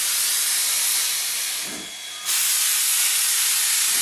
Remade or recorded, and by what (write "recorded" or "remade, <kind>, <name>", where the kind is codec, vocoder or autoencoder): recorded